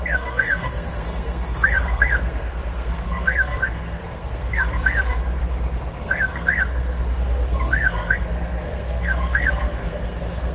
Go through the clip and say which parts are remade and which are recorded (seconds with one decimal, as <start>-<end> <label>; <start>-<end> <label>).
0.0-5.4 remade; 5.4-6.0 recorded; 6.0-10.5 remade